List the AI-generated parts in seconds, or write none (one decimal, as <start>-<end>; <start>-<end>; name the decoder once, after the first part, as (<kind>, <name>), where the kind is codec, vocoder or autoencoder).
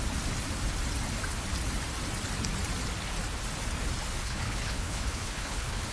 4.2-5.9 (codec, HILCodec)